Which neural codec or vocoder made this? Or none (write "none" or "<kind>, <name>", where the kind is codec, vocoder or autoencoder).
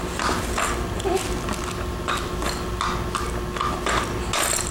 none